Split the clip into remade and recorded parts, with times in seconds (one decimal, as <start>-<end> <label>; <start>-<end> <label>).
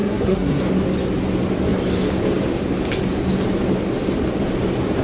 0.0-0.6 remade; 0.6-5.0 recorded